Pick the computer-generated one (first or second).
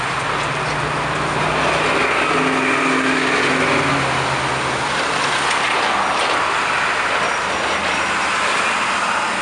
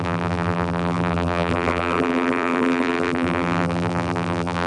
second